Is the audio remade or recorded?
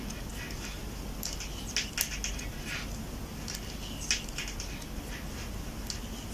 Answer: recorded